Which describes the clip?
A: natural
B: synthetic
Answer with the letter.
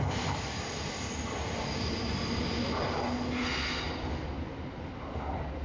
A